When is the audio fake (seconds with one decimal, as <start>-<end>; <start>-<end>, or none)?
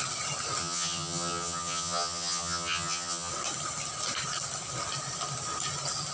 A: 0.6-3.3